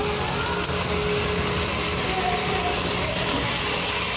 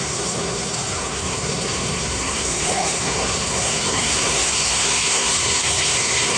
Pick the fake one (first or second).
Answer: second